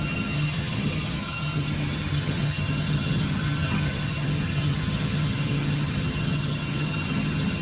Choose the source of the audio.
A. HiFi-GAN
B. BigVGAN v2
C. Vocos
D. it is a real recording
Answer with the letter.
A